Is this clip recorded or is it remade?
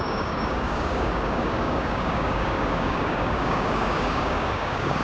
remade